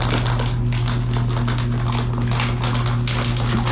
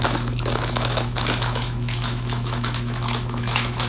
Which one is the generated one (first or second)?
second